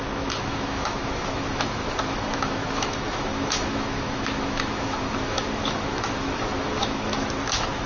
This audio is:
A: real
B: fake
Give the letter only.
B